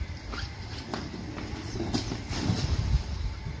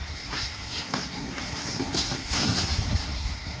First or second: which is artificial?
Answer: second